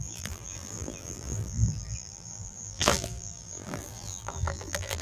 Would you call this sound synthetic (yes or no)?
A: yes